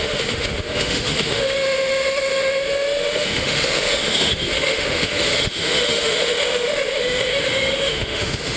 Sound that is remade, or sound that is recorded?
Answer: remade